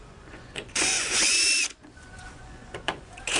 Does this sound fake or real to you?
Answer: fake